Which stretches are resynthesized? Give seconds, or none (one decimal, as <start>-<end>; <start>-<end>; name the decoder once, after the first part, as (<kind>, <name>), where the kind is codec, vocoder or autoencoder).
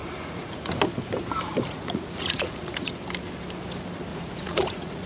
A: 0.0-0.7 (vocoder, Vocos); 1.5-2.9; 4.1-5.1